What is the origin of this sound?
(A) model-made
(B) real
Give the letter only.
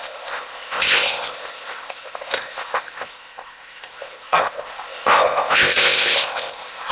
A